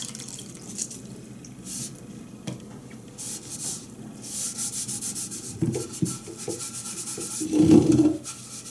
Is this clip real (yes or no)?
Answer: yes